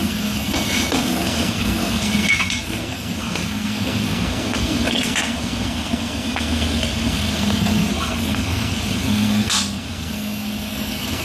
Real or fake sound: fake